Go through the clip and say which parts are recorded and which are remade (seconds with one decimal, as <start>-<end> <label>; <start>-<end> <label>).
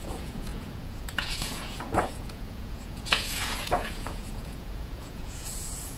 0.0-6.0 remade